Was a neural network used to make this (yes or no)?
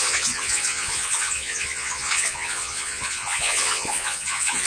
yes